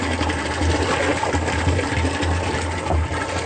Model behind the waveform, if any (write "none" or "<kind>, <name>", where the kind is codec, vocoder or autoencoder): none